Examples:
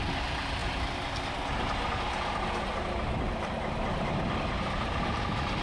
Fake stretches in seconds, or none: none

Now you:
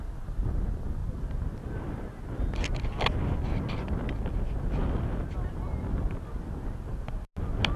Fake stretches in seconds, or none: none

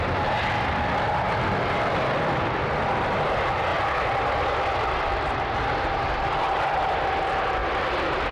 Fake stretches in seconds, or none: none

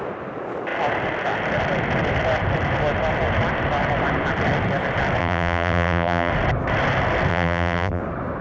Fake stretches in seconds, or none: 5.2-6.3 (vocoder, BigVGAN v2); 7.3-8.0

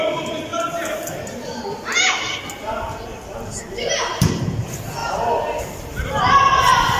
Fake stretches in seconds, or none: 0.0-0.5 (vocoder, BigVGAN v2); 4.4-5.0; 5.6-7.0

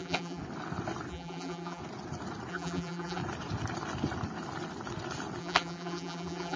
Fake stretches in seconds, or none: 0.0-0.4 (vocoder, BigVGAN v2); 1.1-1.8; 2.5-3.2; 5.4-6.6

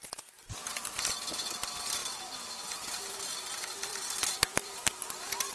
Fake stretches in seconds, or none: 3.9-5.5 (vocoder, BigVGAN v2)

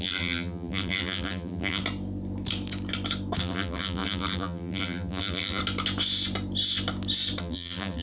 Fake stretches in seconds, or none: 0.0-1.8 (vocoder, BigVGAN v2); 3.4-5.6; 7.4-8.0